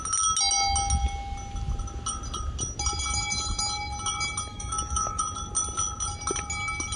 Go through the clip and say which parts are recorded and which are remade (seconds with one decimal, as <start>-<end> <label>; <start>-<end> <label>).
0.0-4.5 recorded; 4.5-5.2 remade; 5.2-7.0 recorded